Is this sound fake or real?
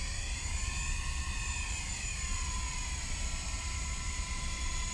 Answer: fake